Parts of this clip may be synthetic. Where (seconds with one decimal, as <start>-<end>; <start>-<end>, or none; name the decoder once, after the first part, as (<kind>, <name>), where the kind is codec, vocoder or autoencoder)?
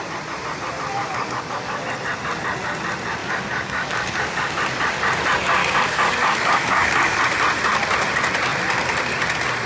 1.1-1.8 (codec, DAC); 3.2-4.5; 5.6-7.2